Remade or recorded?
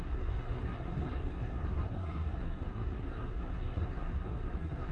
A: remade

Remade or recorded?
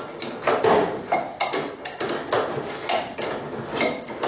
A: recorded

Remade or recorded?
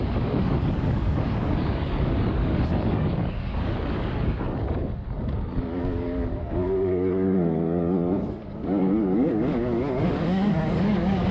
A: remade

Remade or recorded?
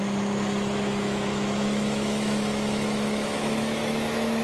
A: remade